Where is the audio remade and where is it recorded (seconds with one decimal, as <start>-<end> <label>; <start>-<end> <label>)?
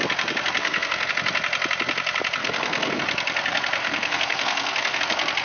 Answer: 0.0-0.6 recorded; 0.6-1.1 remade; 1.1-2.4 recorded; 2.4-2.9 remade; 2.9-3.8 recorded; 3.8-5.0 remade; 5.0-5.4 recorded